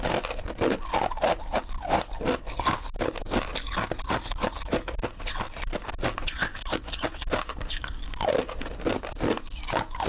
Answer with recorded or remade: recorded